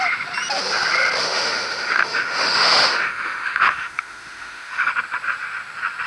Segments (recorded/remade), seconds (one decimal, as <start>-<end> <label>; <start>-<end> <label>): 0.0-1.2 recorded; 1.2-4.9 remade; 4.9-6.1 recorded